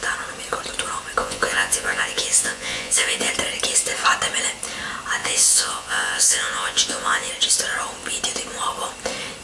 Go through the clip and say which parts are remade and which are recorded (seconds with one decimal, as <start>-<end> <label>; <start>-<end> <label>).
0.0-1.2 recorded; 1.2-3.3 remade; 3.3-5.2 recorded; 5.2-7.3 remade; 7.3-9.4 recorded